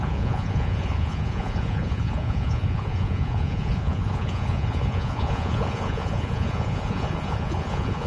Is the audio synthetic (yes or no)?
yes